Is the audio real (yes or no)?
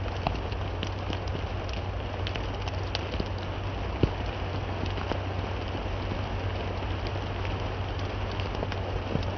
yes